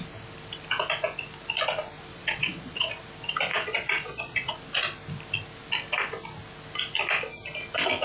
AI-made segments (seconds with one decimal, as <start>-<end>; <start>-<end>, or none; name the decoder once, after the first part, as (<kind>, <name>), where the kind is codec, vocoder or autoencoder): 2.1-2.9 (vocoder, Vocos); 3.5-4.5